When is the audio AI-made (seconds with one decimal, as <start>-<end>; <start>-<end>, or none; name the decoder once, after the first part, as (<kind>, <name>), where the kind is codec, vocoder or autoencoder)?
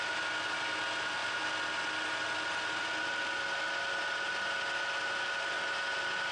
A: none